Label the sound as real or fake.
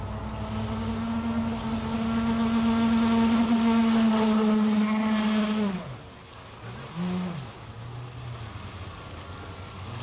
real